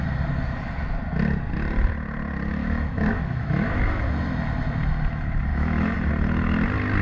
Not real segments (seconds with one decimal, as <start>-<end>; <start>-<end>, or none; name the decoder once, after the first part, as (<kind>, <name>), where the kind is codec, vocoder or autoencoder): 2.6-4.0 (autoencoder, DAC-VAE); 5.5-6.1